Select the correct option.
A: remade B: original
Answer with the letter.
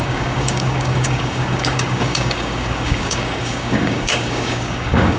A